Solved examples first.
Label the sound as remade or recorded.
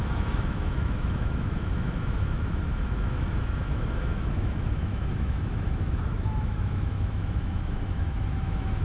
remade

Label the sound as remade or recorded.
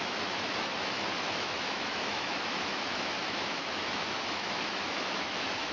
remade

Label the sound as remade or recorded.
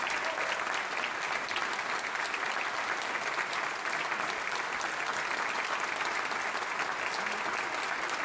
recorded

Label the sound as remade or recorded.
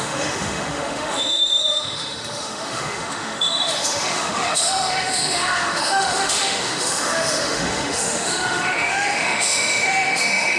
remade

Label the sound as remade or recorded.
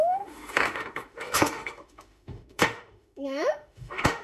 remade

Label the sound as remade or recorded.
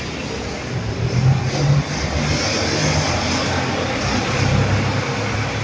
recorded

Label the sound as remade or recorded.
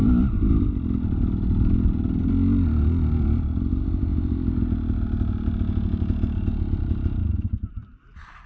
recorded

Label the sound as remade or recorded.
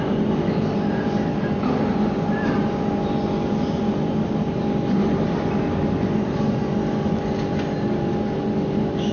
recorded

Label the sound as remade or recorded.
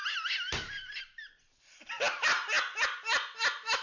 recorded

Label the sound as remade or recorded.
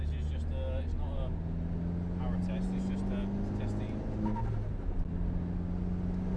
recorded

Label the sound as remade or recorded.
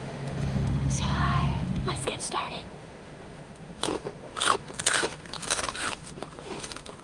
remade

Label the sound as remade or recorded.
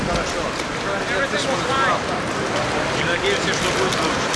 recorded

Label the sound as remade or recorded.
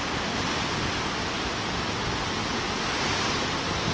recorded